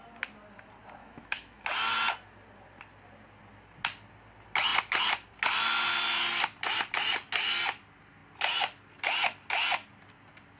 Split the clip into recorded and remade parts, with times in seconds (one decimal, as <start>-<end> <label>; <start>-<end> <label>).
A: 0.0-1.0 recorded; 1.0-1.6 remade; 1.6-10.6 recorded